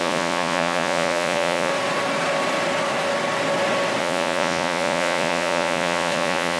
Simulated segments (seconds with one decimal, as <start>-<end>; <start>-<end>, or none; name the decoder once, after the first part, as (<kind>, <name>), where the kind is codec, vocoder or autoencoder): 0.0-1.7 (vocoder, Vocos); 4.0-6.6